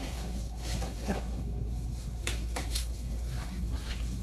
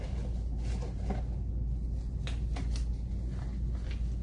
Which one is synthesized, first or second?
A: first